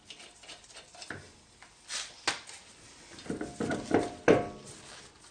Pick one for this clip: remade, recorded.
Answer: recorded